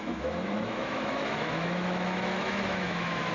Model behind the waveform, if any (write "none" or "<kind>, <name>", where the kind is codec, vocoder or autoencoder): autoencoder, DAC-VAE